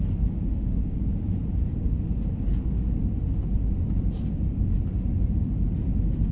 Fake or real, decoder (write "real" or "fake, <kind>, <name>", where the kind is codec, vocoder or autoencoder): real